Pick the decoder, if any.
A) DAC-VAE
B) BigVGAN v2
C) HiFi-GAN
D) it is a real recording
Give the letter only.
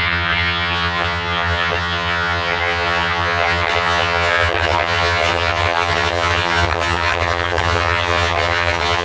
C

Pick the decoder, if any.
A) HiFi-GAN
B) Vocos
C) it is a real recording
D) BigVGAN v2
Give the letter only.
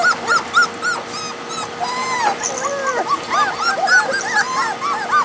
C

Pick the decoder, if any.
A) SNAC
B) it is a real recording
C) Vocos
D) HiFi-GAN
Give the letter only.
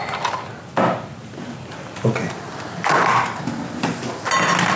B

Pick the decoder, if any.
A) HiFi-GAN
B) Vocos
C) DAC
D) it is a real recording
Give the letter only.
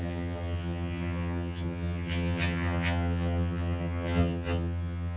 A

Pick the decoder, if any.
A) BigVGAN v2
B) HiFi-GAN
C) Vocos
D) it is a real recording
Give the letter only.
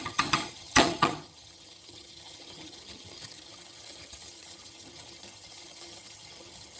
B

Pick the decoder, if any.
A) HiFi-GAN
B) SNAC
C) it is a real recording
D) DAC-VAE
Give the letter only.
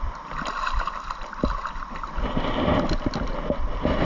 C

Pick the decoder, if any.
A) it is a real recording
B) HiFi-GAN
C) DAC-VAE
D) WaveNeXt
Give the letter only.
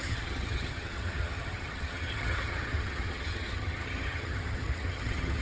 B